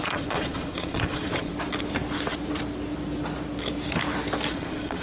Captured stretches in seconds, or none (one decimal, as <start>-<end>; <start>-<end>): 1.5-4.5